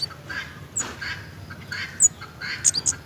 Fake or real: real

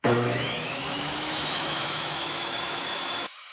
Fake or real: fake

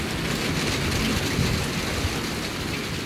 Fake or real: real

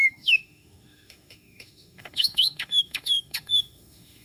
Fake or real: fake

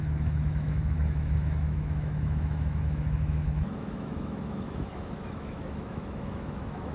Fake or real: fake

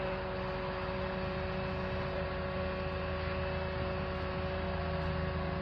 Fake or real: real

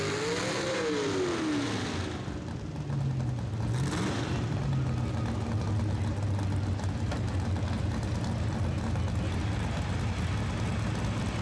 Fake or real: real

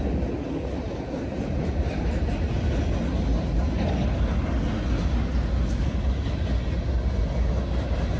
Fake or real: real